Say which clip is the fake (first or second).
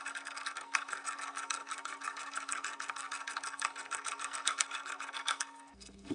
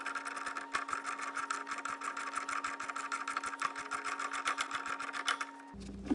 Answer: first